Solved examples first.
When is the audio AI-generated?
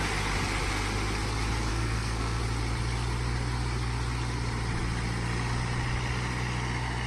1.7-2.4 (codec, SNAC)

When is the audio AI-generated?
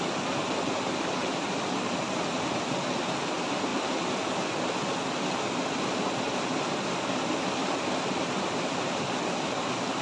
none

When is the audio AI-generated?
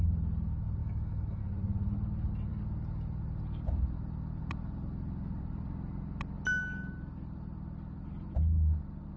0.8-1.4 (autoencoder, DAC-VAE)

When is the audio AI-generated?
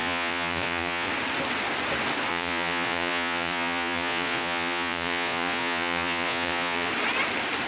0.0-1.1 (vocoder, Vocos); 2.3-6.9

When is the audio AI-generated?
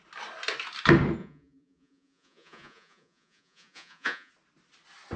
1.2-4.3 (vocoder, Vocos)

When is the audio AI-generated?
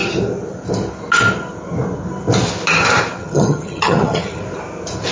3.2-4.4 (vocoder, HiFi-GAN)